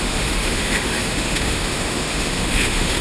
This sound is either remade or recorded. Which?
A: remade